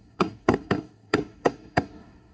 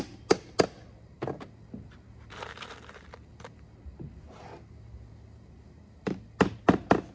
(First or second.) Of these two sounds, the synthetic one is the first